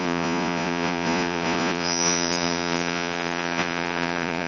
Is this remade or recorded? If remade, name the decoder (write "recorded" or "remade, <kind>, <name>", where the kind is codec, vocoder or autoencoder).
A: remade, vocoder, Vocos